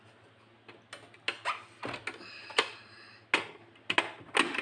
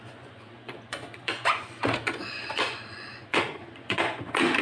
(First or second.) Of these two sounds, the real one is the first